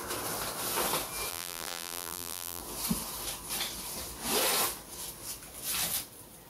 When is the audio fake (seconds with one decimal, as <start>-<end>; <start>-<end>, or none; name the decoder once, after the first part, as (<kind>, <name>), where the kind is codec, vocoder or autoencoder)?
1.3-2.6 (vocoder, BigVGAN v2)